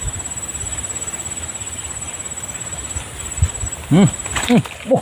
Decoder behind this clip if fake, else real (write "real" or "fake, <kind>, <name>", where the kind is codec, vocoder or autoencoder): real